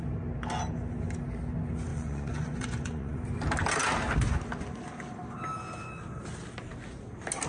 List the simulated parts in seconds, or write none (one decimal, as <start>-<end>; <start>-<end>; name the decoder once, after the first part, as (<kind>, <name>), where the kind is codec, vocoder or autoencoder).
1.9-3.2 (vocoder, Vocos)